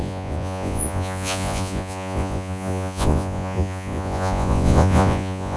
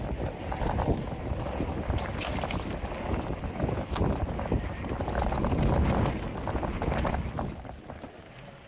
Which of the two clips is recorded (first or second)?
second